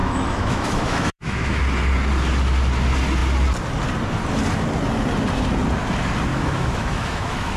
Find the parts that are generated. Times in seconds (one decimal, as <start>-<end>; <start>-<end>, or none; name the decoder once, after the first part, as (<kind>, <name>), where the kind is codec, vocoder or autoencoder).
0.0-1.6 (autoencoder, DAC-VAE); 6.3-7.6